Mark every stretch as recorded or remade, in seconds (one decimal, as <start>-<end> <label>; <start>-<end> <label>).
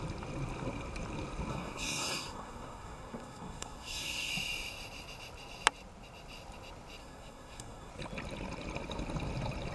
0.0-1.5 recorded; 1.5-4.3 remade; 4.3-7.0 recorded; 7.0-7.9 remade; 7.9-9.7 recorded